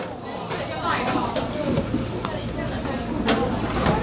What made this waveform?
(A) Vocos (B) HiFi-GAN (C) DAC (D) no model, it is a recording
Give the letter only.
D